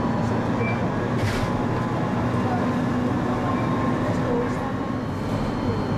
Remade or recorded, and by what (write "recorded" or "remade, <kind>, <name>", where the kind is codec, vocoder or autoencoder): recorded